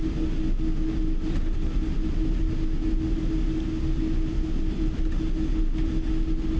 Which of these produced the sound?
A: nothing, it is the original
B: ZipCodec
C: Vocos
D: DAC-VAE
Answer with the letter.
A